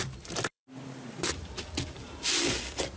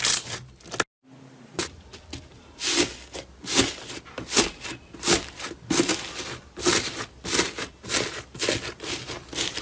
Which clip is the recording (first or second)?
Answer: second